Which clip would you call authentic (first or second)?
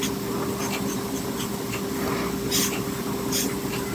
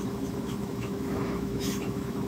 first